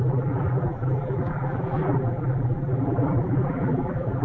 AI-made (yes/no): yes